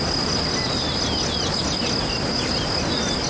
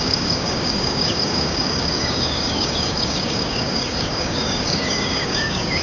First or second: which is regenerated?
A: second